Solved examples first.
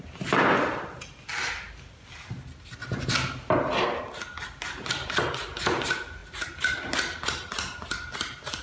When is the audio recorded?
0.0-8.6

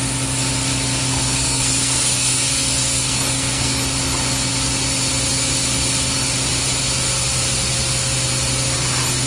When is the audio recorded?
0.0-1.1; 3.8-9.3

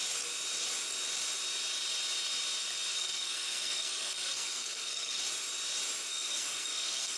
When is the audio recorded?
0.0-2.9; 5.2-6.1

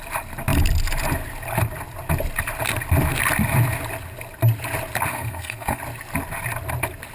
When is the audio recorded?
0.0-5.1; 5.8-7.1

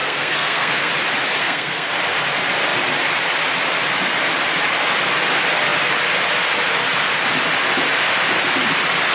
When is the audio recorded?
0.9-1.4; 1.9-9.1

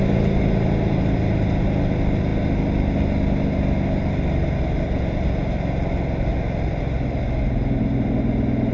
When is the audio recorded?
0.0-8.7

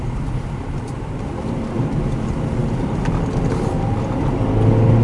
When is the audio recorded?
0.0-5.0

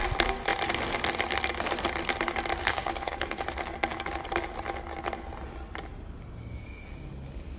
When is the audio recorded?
0.0-2.7; 3.4-7.6